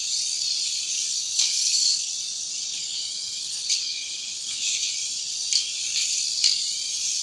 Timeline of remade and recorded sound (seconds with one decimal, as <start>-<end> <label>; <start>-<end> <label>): 0.0-1.1 recorded; 1.1-2.1 remade; 2.1-2.7 recorded; 2.7-4.9 remade; 4.9-7.2 recorded